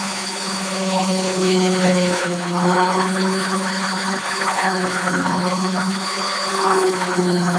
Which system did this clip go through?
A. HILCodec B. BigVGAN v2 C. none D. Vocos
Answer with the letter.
A